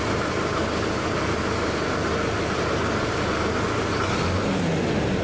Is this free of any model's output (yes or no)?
yes